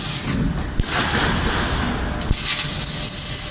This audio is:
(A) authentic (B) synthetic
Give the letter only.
A